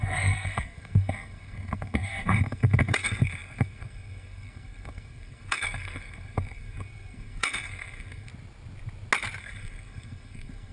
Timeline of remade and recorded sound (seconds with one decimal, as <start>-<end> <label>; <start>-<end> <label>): 0.0-8.3 remade; 8.3-9.4 recorded; 9.4-10.7 remade